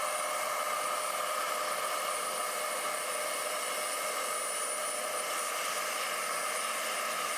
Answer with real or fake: real